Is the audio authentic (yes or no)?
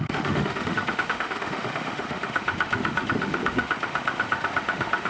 no